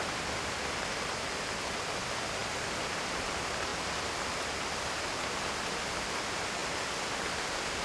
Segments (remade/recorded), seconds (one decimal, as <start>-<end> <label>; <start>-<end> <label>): 0.0-1.8 remade; 1.8-6.6 recorded; 6.6-7.1 remade; 7.1-7.8 recorded